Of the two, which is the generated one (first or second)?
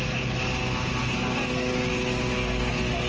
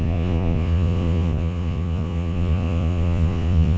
second